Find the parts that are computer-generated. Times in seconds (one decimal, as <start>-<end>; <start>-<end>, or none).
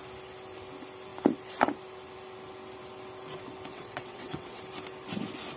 3.7-4.6